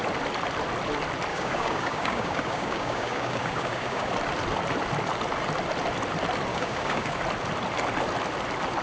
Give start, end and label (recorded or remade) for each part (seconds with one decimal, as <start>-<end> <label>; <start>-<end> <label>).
0.0-1.3 recorded; 1.3-4.1 remade; 4.1-6.5 recorded; 6.5-7.2 remade; 7.2-8.8 recorded